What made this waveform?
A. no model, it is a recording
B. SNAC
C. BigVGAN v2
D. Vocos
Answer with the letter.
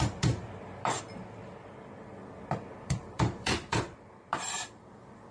C